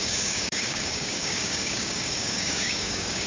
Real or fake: fake